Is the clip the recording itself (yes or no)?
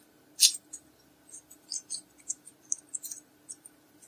yes